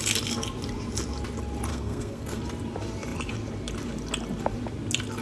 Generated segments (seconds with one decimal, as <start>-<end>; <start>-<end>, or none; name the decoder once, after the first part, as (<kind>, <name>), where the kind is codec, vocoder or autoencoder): 1.7-2.4 (codec, SNAC)